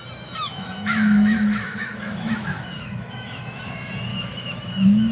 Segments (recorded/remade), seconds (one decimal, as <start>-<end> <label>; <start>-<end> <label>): 0.0-0.5 recorded; 0.5-3.6 remade; 3.6-4.1 recorded; 4.1-5.1 remade